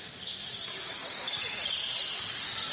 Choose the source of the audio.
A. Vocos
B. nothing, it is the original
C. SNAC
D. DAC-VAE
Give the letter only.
B